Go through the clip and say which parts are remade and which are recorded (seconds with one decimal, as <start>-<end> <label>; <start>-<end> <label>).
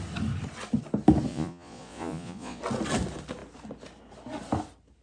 0.0-1.3 recorded; 1.3-2.6 remade; 2.6-5.0 recorded